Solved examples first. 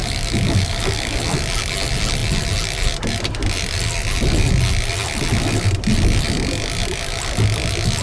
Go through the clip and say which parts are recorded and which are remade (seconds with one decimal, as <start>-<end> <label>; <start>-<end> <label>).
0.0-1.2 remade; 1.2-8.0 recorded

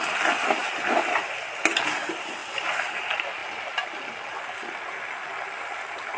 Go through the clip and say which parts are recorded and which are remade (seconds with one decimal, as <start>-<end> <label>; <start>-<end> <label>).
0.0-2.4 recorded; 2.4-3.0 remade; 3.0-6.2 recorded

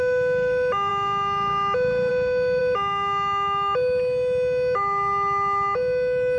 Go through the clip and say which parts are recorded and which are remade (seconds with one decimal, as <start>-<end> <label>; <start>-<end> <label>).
0.0-6.4 recorded

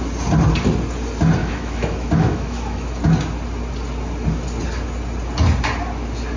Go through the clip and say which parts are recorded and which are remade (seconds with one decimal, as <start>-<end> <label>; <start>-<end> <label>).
0.0-1.4 recorded; 1.4-3.0 remade; 3.0-6.4 recorded